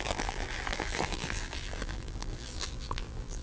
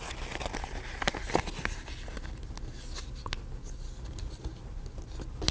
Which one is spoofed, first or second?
first